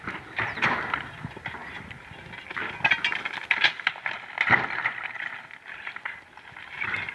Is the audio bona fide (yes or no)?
yes